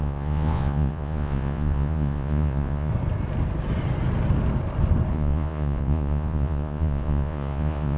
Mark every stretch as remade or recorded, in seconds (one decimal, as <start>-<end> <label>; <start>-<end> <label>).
0.0-2.9 remade; 2.9-5.1 recorded; 5.1-8.0 remade